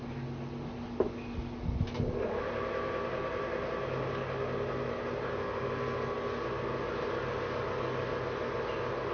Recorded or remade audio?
remade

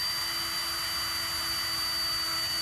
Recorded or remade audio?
recorded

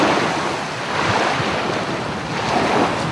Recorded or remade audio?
recorded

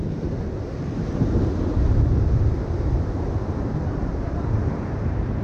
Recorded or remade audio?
remade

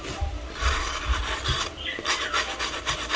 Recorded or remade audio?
remade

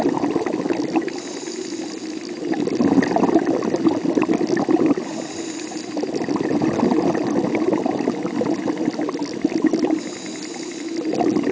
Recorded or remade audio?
recorded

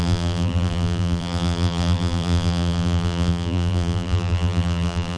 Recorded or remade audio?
remade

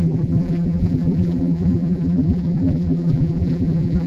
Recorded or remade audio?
remade